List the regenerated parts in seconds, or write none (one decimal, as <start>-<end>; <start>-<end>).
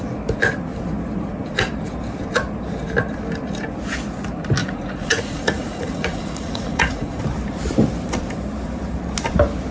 4.6-7.2